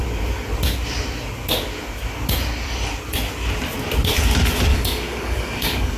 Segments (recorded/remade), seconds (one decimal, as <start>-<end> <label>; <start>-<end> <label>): 0.0-4.7 recorded; 4.7-6.0 remade